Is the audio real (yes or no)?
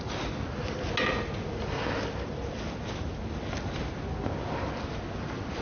yes